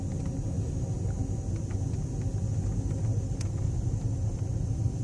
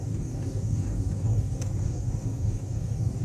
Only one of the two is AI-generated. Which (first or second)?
second